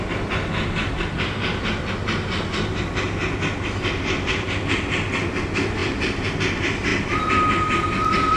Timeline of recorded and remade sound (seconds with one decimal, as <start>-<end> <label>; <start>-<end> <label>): 0.0-8.4 recorded